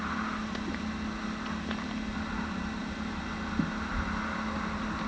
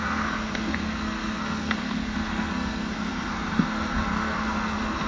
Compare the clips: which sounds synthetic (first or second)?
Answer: second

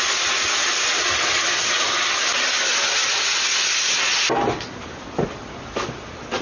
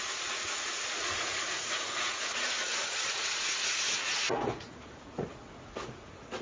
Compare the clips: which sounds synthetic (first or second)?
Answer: second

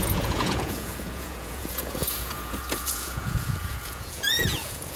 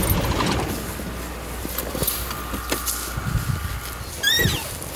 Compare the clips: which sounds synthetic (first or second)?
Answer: first